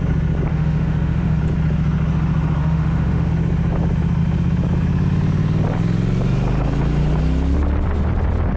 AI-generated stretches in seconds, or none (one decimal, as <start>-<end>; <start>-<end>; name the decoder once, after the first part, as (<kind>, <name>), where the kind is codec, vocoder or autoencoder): 0.5-1.4 (autoencoder, DAC-VAE); 2.6-3.3